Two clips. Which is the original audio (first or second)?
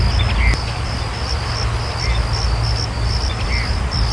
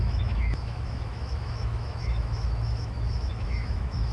first